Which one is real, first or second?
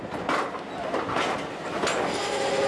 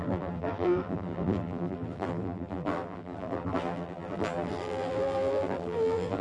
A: first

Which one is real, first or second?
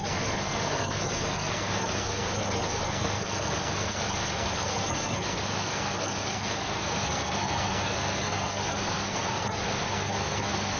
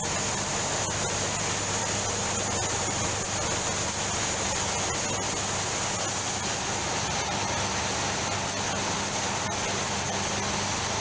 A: second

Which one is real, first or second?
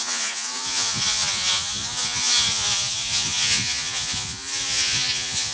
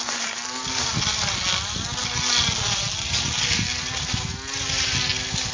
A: second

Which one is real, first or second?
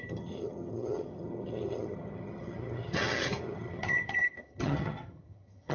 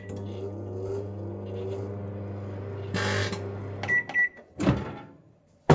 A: second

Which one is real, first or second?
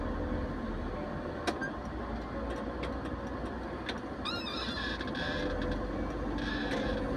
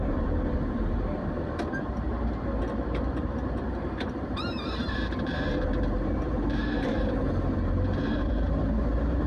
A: first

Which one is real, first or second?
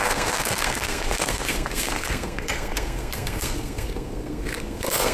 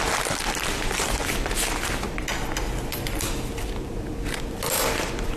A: second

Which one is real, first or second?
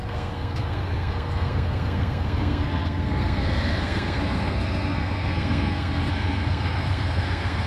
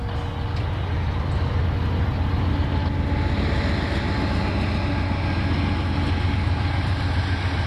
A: second